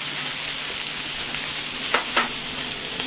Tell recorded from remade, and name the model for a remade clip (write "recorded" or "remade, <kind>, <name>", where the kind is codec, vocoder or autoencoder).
recorded